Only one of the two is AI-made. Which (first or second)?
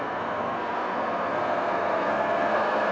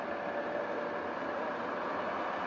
first